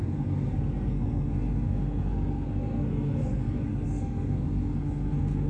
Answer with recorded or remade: remade